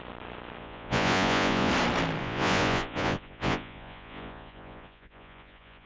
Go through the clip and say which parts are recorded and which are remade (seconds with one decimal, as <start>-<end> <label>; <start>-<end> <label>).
0.0-0.6 recorded; 0.6-1.7 remade; 1.7-2.2 recorded; 2.2-5.9 remade